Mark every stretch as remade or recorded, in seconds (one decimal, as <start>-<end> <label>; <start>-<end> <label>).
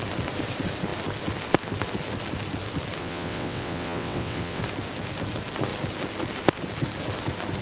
0.0-3.0 recorded; 3.0-4.6 remade; 4.6-7.6 recorded